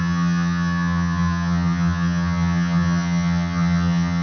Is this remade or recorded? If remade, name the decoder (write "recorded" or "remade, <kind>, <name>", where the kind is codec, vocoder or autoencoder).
remade, vocoder, HiFi-GAN